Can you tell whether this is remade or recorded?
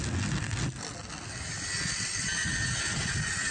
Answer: recorded